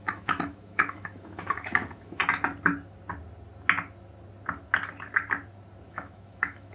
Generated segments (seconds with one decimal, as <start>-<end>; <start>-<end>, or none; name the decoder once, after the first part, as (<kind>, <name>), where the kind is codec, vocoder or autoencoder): 0.0-2.2 (autoencoder, DAC-VAE); 5.9-6.7